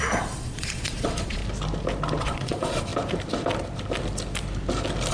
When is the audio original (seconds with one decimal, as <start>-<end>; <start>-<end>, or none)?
1.4-2.2; 2.9-5.1